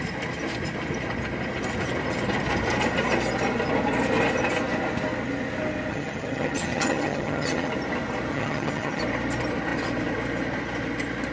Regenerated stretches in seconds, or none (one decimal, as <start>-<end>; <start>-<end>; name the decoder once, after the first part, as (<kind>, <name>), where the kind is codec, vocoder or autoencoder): 5.9-7.7 (vocoder, HiFi-GAN); 8.3-9.0